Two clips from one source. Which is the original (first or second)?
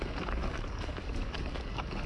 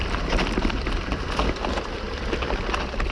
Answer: second